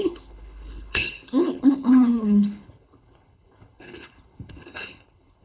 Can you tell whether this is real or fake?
fake